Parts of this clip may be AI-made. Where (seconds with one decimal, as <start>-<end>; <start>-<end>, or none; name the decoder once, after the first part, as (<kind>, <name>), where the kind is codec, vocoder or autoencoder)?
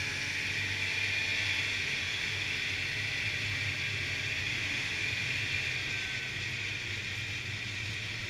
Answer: 1.7-2.5 (autoencoder, DAC-VAE); 4.4-5.4